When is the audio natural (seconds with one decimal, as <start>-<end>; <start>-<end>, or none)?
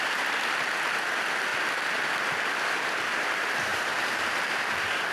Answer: 0.0-1.5; 3.3-3.7